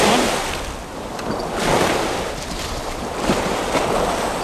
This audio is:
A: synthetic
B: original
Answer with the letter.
B